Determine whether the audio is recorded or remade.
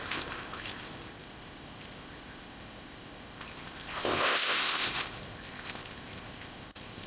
remade